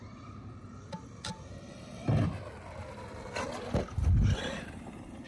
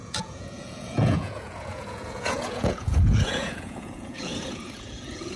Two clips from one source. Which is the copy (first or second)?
second